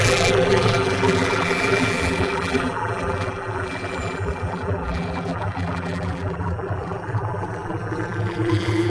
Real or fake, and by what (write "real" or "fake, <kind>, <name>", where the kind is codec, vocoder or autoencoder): fake, vocoder, BigVGAN v2